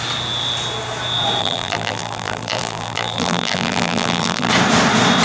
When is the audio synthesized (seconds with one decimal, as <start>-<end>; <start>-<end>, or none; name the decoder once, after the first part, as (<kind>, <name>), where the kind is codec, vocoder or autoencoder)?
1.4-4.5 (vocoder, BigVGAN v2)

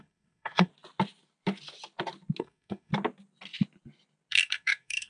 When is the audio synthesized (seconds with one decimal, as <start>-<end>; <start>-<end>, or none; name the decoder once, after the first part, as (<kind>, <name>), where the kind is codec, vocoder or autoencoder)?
0.0-0.7 (codec, SNAC); 2.4-2.9; 4.3-5.1

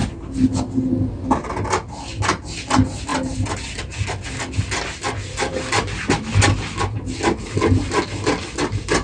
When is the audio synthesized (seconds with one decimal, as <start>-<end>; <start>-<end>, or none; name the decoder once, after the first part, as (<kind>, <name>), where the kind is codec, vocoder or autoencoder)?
none